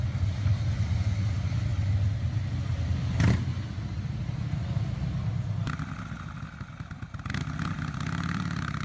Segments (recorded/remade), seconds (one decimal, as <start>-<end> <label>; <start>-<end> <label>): 0.0-1.7 remade; 1.7-6.7 recorded; 6.7-8.8 remade